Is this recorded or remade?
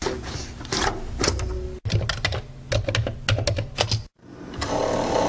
recorded